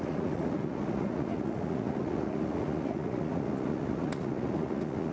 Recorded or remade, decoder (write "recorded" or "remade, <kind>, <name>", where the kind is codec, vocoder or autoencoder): remade, vocoder, Vocos